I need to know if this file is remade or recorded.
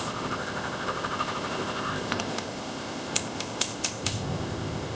remade